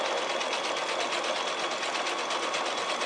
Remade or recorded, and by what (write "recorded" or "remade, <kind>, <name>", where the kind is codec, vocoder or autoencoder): recorded